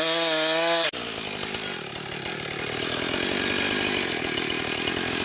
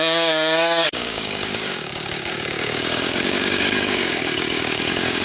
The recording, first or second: first